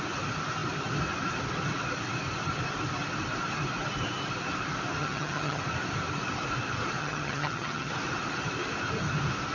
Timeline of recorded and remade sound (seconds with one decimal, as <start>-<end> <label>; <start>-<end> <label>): 0.0-5.0 recorded; 5.0-5.6 remade; 5.6-7.0 recorded; 7.0-7.9 remade; 7.9-9.5 recorded